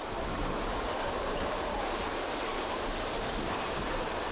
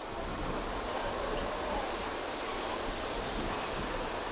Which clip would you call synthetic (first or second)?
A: first